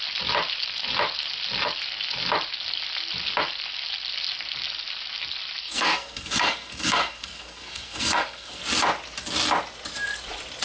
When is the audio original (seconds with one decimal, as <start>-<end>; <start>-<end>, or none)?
0.0-5.6; 8.6-10.6